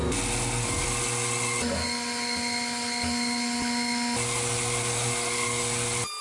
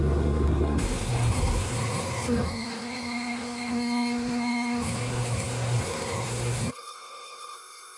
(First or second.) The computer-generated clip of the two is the second